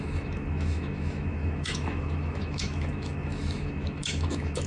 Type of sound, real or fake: fake